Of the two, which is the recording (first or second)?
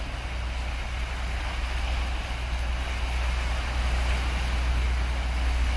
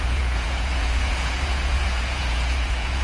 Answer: first